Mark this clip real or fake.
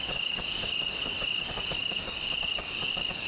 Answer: fake